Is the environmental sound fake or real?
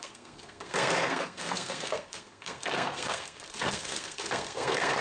fake